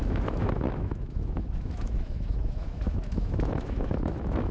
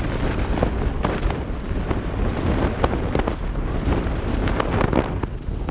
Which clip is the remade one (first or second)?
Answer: first